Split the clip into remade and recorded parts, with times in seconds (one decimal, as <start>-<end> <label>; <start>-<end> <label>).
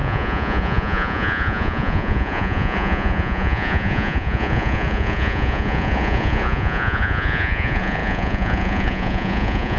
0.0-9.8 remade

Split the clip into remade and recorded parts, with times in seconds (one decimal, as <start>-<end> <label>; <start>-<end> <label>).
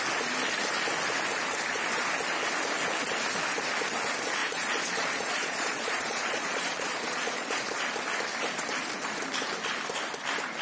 0.0-4.4 recorded; 4.4-7.6 remade; 7.6-10.6 recorded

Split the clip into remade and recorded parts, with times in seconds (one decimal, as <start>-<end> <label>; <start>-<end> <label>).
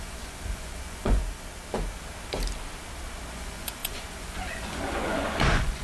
0.0-1.2 remade; 1.2-3.3 recorded; 3.3-5.8 remade